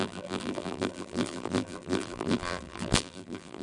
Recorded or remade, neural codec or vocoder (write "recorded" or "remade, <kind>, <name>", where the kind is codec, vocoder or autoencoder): remade, vocoder, BigVGAN v2